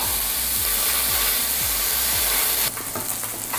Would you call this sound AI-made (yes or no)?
no